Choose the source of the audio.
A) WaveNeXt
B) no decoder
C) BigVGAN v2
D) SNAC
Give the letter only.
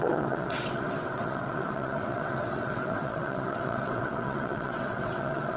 A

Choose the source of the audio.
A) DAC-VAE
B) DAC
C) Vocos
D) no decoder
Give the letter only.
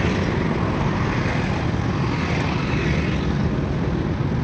D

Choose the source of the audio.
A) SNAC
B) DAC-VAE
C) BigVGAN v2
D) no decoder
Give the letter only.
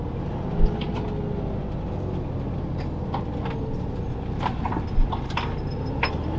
D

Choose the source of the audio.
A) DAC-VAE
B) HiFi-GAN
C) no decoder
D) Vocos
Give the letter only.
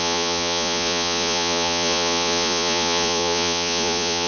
D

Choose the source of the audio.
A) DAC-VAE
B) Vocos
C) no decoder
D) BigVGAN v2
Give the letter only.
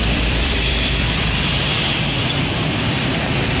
D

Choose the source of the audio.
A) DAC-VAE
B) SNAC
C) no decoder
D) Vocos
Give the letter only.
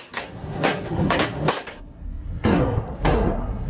B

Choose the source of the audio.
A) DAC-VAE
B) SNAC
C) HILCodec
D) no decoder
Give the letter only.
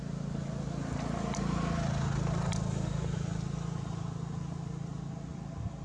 D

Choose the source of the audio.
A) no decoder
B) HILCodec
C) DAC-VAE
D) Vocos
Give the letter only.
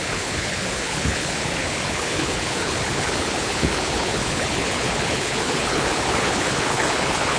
B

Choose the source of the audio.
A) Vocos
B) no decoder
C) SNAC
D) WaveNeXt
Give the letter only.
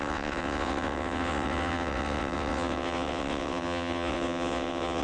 D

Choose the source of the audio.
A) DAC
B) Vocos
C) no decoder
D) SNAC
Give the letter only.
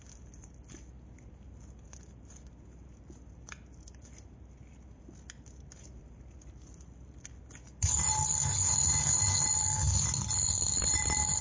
C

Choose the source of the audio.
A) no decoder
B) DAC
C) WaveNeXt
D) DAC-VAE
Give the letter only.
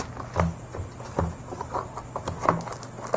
A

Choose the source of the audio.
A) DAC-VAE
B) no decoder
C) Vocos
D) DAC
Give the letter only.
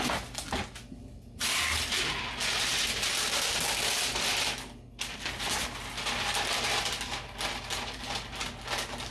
B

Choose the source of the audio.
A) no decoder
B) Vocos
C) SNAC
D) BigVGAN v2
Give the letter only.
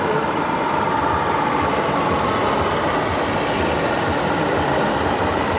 A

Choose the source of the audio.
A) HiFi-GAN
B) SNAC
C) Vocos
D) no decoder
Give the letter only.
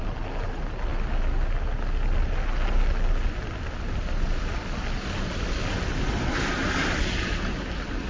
D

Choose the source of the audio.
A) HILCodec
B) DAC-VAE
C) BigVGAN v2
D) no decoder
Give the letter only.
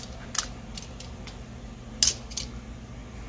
D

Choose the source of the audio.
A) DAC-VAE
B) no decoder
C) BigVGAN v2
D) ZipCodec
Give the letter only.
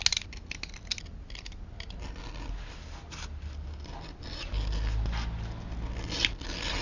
B